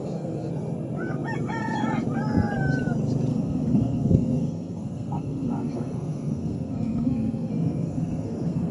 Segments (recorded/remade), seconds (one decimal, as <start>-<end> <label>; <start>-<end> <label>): 0.0-0.5 remade; 0.5-3.3 recorded; 3.3-8.7 remade